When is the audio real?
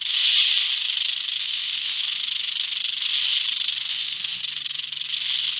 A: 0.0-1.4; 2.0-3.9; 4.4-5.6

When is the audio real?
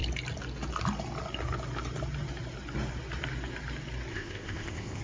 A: 0.0-4.1